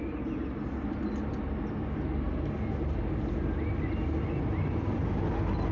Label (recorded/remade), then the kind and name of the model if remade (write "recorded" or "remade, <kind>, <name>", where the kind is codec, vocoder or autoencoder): recorded